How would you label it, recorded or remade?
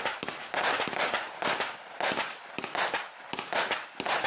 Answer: recorded